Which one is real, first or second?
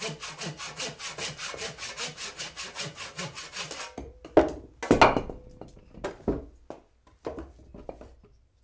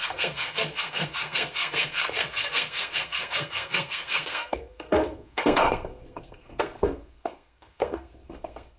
first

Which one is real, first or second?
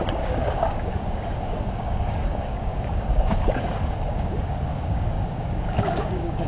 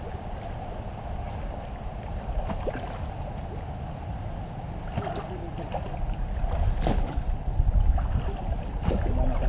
second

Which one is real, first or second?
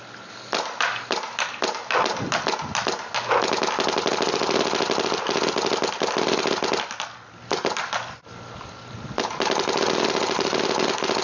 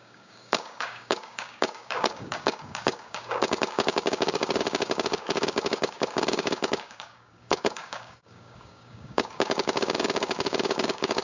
first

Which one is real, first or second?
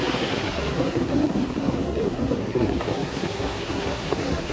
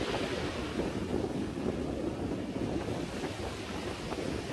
second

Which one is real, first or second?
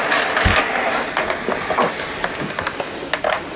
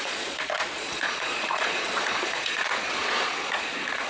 first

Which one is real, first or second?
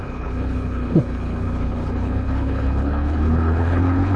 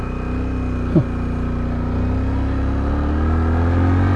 second